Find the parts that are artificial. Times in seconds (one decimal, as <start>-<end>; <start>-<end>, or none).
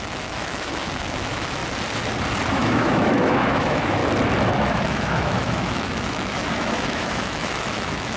0.0-1.6; 2.5-4.0; 4.6-8.2